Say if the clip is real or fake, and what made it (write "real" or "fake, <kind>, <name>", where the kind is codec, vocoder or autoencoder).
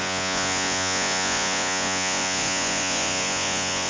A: fake, vocoder, Vocos